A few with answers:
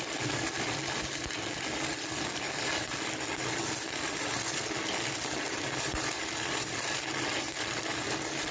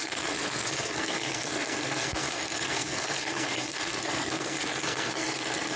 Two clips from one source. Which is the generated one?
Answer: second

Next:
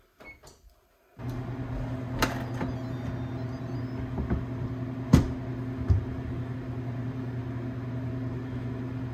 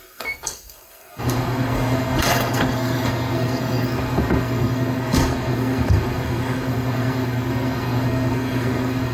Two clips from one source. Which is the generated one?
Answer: second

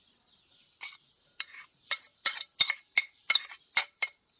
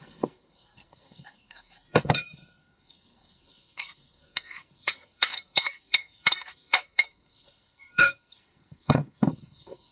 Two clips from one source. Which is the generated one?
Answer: second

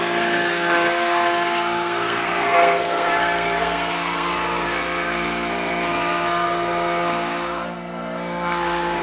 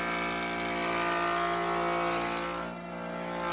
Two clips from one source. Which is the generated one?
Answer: first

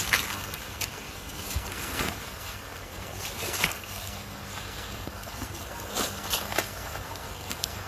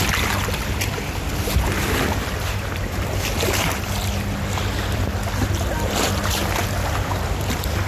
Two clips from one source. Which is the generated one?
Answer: first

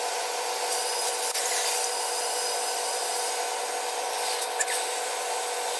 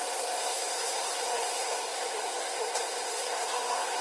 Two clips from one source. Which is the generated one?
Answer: second